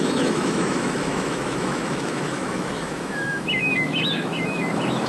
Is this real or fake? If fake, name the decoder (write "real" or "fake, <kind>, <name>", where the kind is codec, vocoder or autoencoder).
fake, autoencoder, DAC-VAE